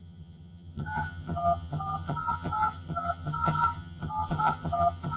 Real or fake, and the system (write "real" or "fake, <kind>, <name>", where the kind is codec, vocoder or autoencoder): fake, vocoder, HiFi-GAN